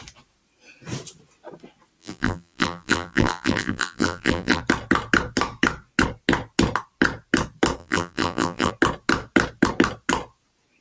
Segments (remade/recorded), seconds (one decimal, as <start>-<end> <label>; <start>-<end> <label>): 0.0-2.0 recorded; 2.0-4.6 remade; 4.6-7.8 recorded; 7.8-8.7 remade; 8.7-10.8 recorded